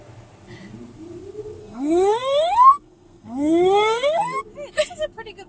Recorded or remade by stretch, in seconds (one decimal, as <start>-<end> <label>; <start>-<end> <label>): 0.0-1.6 recorded; 1.6-4.4 remade; 4.4-5.5 recorded